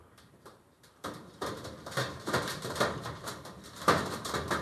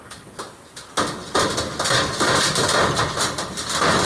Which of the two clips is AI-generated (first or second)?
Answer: first